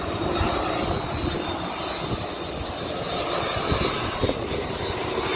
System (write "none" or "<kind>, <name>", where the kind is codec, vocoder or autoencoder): none